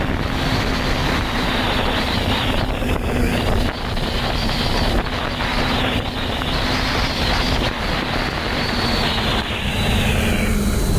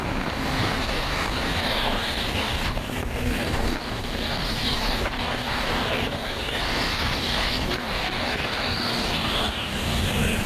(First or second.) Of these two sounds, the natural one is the first